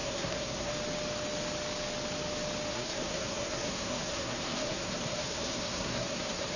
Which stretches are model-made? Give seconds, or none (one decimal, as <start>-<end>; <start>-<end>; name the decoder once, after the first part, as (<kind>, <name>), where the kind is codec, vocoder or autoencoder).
0.0-0.7 (codec, SNAC); 2.7-6.6